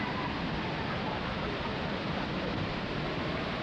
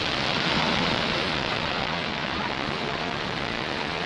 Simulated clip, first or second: second